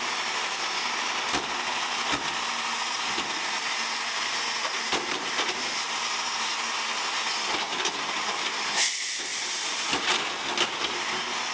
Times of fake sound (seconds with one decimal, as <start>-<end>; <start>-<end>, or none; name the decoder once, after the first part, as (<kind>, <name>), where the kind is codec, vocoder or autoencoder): 4.6-6.5 (vocoder, BigVGAN v2)